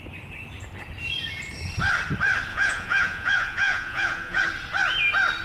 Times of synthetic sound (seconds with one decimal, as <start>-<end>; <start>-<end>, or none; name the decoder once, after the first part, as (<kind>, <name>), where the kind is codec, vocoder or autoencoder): 2.5-4.4 (vocoder, Vocos)